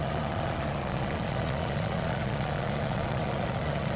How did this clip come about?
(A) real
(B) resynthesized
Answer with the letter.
B